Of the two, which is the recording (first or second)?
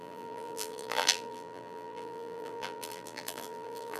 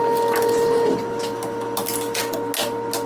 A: second